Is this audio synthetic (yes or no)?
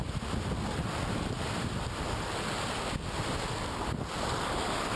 no